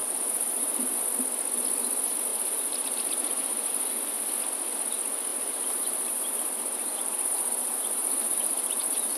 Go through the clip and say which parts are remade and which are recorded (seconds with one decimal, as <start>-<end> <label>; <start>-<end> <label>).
0.0-1.0 remade; 1.0-2.3 recorded; 2.3-3.7 remade; 3.7-5.3 recorded; 5.3-9.2 remade